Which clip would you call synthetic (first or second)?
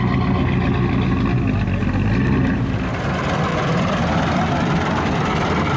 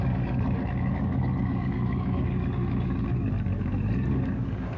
second